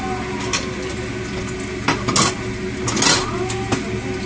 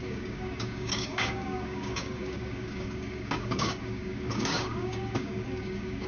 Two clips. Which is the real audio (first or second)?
first